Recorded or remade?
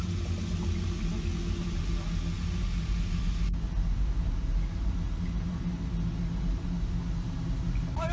recorded